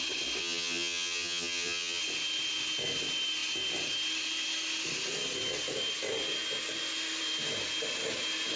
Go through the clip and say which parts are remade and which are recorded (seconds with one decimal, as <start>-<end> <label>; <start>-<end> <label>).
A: 0.0-0.4 recorded; 0.4-2.0 remade; 2.0-8.6 recorded